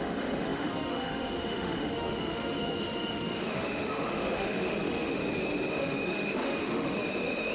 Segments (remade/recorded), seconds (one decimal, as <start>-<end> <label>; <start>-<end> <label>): 0.0-5.2 remade; 5.2-5.7 recorded; 5.7-7.5 remade